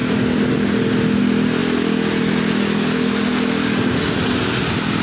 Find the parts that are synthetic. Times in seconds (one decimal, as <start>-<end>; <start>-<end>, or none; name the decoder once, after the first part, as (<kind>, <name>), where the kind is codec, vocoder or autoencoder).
none

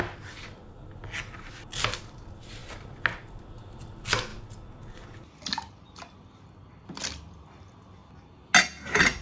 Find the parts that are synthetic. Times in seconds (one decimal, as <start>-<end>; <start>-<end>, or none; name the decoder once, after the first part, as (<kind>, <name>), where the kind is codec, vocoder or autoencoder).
none

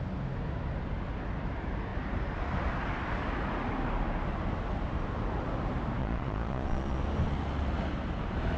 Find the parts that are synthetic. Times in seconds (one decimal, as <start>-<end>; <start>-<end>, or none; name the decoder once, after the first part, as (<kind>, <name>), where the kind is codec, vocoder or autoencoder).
6.0-7.0 (vocoder, Vocos)

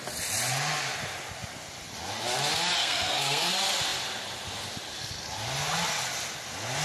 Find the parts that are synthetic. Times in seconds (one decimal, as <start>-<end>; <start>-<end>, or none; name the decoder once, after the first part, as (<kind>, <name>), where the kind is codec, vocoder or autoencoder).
2.8-3.5 (codec, SNAC)

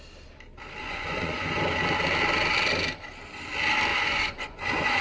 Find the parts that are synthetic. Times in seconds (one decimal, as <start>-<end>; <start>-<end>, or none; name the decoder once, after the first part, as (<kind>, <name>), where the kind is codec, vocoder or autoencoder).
0.8-1.6 (vocoder, Vocos); 3.9-5.0

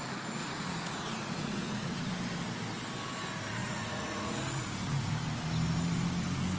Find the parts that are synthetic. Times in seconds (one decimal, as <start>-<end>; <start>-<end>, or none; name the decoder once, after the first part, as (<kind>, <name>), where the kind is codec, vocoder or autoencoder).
0.4-2.1 (vocoder, Vocos); 3.6-5.1